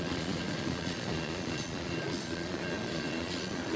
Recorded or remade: remade